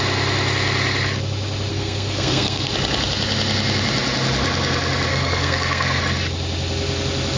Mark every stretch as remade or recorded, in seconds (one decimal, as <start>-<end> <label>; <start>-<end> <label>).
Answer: 0.0-1.7 recorded; 1.7-2.7 remade; 2.7-5.1 recorded; 5.1-6.0 remade; 6.0-7.4 recorded